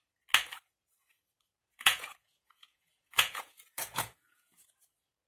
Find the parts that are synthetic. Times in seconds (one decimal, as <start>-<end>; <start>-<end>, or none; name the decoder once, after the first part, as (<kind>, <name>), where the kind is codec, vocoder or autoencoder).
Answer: 1.6-4.8 (vocoder, Vocos)